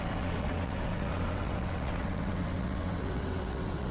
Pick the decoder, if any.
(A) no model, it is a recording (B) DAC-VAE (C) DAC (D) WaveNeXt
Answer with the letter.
D